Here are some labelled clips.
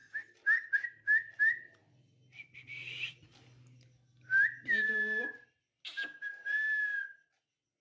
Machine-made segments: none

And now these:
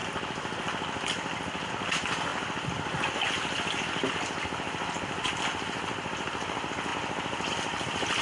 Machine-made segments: none

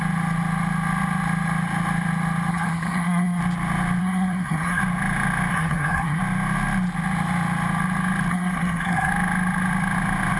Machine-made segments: 2.5-3.4 (codec, SNAC); 4.0-4.8; 5.5-6.2; 8.3-9.1

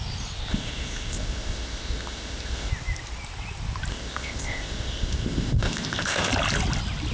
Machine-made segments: 0.5-2.7 (codec, ZipCodec); 3.9-6.3